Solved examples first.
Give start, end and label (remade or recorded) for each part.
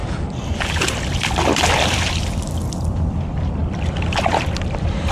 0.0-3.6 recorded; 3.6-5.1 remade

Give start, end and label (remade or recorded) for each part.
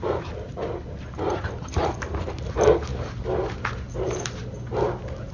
0.0-5.3 recorded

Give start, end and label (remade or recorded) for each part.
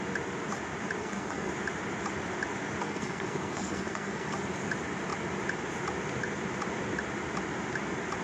0.0-1.0 recorded; 1.0-1.5 remade; 1.5-2.8 recorded; 2.8-4.5 remade; 4.5-8.2 recorded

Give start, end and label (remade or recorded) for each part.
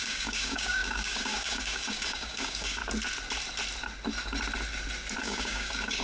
0.0-2.8 remade; 2.8-5.2 recorded; 5.2-6.0 remade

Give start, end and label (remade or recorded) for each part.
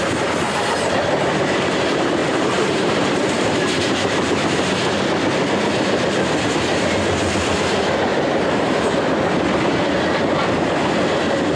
0.0-2.2 recorded; 2.2-5.0 remade; 5.0-8.1 recorded; 8.1-8.8 remade; 8.8-11.6 recorded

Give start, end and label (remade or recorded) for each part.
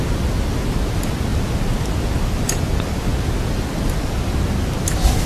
0.0-5.3 recorded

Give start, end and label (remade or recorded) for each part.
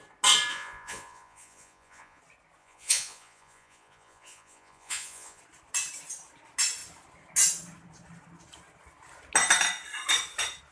0.0-0.5 recorded; 0.5-2.2 remade; 2.2-2.6 recorded; 2.6-5.4 remade; 5.4-10.7 recorded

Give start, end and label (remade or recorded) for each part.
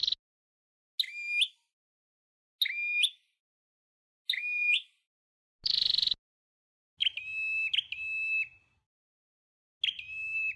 0.0-10.6 recorded